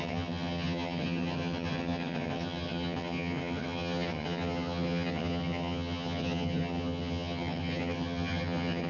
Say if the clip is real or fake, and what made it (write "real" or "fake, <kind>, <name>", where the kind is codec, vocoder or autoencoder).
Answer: fake, vocoder, HiFi-GAN